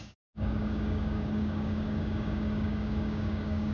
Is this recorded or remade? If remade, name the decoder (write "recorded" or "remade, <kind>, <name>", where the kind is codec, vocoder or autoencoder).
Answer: remade, codec, DAC